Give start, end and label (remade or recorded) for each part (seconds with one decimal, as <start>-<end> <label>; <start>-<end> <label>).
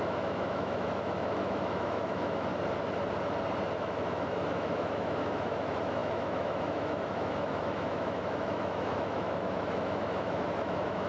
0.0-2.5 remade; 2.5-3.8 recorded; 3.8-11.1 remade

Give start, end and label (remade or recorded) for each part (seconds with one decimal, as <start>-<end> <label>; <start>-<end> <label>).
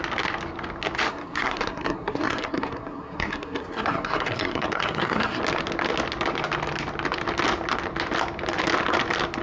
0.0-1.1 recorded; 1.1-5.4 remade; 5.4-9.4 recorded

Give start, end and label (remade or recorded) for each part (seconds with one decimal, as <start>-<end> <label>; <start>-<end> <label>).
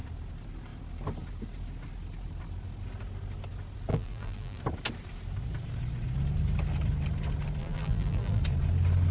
0.0-3.9 recorded; 3.9-4.6 remade; 4.6-7.6 recorded; 7.6-8.4 remade; 8.4-9.1 recorded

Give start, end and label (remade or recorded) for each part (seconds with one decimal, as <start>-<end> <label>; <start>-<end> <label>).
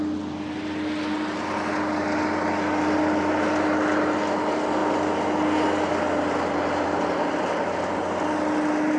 0.0-9.0 recorded